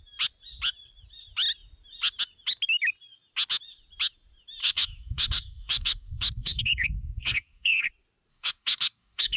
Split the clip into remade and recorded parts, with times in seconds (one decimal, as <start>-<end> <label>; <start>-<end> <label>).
0.0-4.6 recorded; 4.6-7.9 remade; 7.9-8.3 recorded; 8.3-9.4 remade